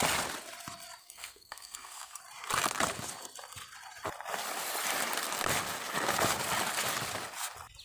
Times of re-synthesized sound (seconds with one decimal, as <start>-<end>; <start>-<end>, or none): 1.0-2.2